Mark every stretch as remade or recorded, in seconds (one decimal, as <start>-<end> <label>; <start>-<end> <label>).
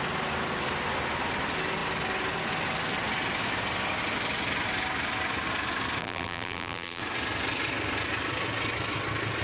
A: 0.0-6.0 recorded; 6.0-7.0 remade; 7.0-9.4 recorded